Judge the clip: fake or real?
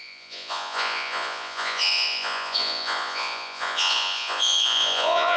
fake